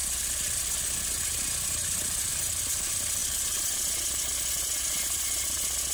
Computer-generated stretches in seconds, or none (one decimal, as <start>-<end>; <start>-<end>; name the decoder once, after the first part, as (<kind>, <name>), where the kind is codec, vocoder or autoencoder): none